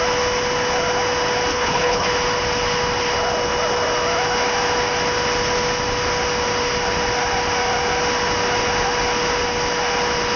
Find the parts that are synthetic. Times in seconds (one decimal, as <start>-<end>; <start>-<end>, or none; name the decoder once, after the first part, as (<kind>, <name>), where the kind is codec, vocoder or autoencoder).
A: 1.5-2.1 (codec, HILCodec)